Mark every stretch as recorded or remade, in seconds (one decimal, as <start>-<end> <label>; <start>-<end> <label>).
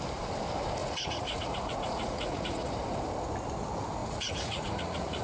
0.0-0.8 recorded; 0.8-2.7 remade; 2.7-4.0 recorded; 4.0-5.2 remade